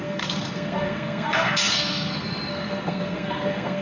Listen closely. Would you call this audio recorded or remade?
remade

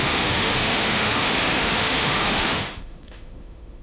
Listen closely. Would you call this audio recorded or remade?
remade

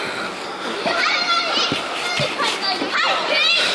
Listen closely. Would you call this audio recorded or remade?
recorded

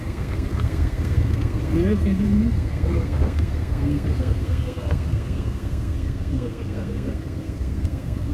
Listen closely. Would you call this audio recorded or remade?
remade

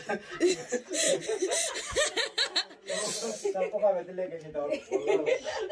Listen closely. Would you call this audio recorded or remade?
recorded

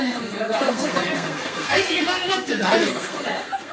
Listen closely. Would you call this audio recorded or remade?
remade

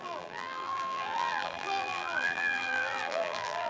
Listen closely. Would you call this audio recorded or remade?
remade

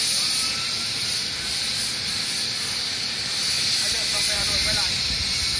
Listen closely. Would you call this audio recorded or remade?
recorded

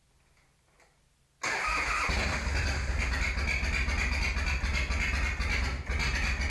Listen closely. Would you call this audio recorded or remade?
recorded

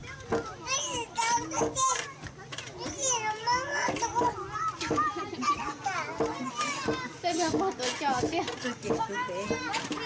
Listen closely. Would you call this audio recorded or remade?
recorded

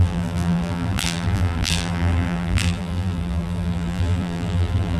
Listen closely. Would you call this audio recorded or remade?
remade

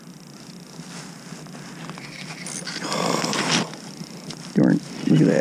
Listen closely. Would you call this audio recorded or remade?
recorded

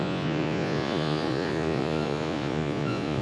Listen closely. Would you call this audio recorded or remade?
remade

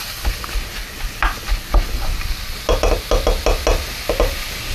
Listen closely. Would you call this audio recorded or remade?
recorded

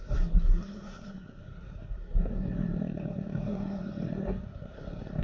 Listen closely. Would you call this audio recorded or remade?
remade